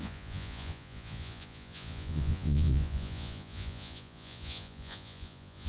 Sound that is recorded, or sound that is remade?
remade